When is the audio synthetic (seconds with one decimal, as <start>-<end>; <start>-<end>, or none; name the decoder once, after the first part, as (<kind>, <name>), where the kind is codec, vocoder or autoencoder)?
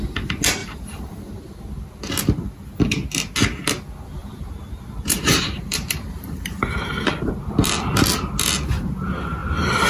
0.6-1.6 (vocoder, BigVGAN v2); 4.2-7.3